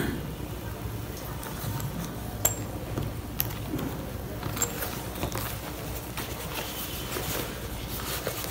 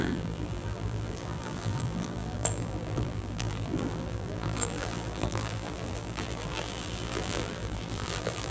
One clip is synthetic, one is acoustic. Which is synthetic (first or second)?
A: second